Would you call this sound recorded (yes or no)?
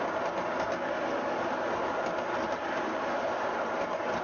yes